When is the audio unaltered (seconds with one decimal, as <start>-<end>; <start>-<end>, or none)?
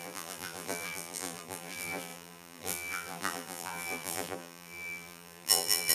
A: none